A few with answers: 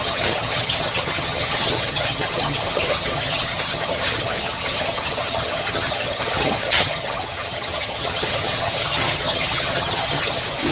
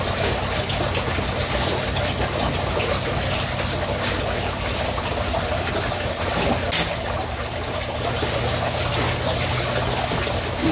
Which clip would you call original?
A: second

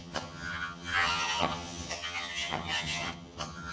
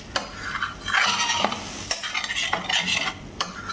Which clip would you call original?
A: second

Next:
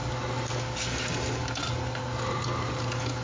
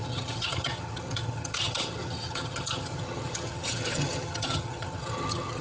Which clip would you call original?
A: first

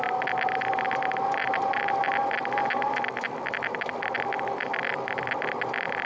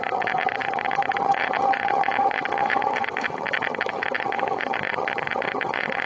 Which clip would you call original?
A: first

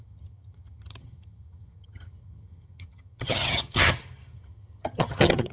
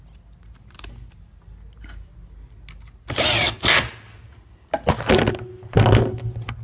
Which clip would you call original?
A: second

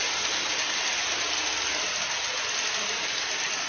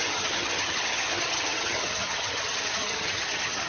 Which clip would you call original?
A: first